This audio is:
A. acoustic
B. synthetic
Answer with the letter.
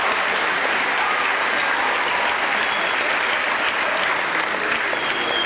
A